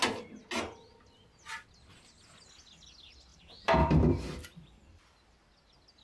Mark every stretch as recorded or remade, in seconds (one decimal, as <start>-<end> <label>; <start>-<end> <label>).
0.0-3.3 recorded; 3.3-4.8 remade; 4.8-6.0 recorded